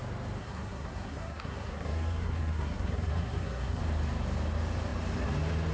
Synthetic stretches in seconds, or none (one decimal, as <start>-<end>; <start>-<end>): 0.4-3.8